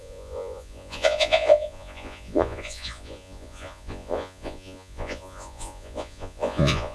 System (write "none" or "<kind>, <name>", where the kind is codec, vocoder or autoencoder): vocoder, Vocos